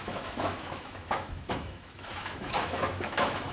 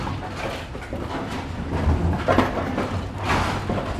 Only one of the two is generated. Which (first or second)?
first